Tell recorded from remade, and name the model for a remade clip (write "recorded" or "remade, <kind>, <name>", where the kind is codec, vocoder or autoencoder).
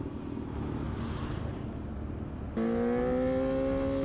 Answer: recorded